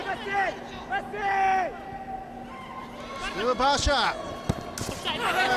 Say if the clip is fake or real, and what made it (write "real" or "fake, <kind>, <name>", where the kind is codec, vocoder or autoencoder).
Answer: real